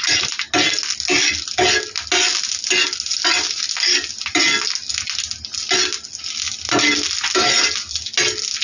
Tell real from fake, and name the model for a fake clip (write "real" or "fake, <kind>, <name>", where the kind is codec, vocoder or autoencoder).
real